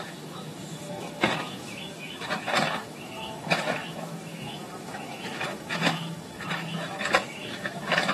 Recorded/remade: remade